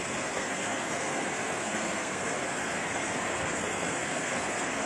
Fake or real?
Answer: fake